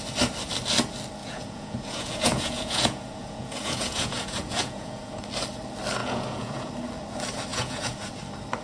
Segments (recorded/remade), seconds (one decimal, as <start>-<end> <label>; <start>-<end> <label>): 0.0-1.2 recorded; 1.2-5.2 remade; 5.2-6.0 recorded; 6.0-6.7 remade; 6.7-7.5 recorded; 7.5-8.2 remade; 8.2-8.6 recorded